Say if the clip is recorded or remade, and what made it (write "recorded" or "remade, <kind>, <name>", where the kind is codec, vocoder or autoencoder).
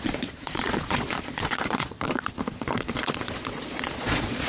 remade, vocoder, Vocos